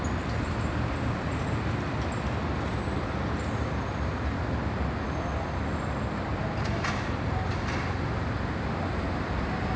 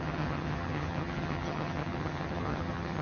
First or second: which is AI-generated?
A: second